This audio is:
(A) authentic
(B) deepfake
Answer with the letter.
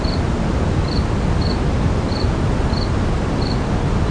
A